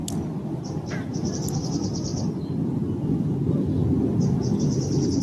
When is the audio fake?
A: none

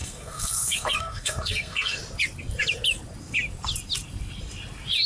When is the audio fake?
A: 0.0-2.0 (codec, SNAC)

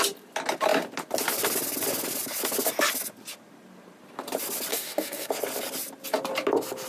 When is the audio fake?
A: 4.7-5.3 (codec, DAC)

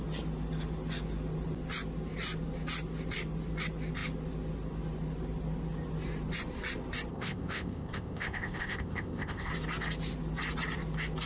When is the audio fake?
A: 7.1-9.5 (codec, ZipCodec)